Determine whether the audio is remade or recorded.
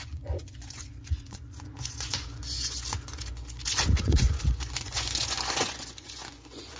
remade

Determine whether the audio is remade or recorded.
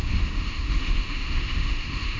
remade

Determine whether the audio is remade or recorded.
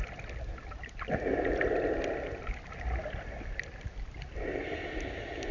recorded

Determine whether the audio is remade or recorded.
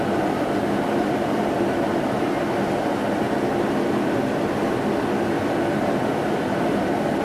recorded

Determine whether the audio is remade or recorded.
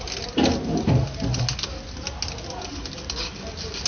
recorded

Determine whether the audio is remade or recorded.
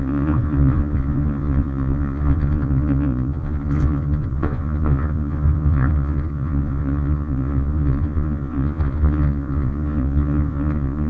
remade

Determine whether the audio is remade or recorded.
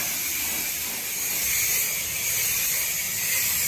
recorded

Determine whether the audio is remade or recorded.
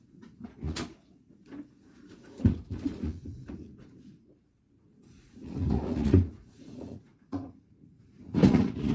remade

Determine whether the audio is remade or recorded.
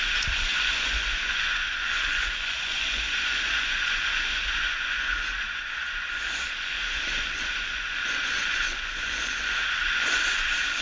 remade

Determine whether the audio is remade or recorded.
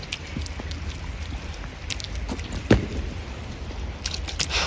remade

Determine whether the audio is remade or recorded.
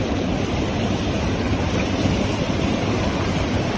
recorded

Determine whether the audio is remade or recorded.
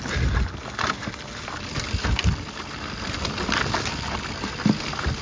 recorded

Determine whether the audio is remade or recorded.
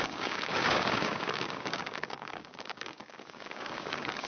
remade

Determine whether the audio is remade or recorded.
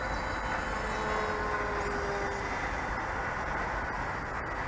recorded